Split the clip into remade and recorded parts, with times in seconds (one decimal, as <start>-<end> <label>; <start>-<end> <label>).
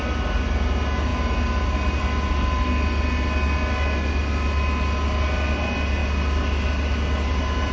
0.0-7.7 recorded